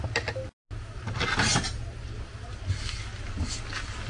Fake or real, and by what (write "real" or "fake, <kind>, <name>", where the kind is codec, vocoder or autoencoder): real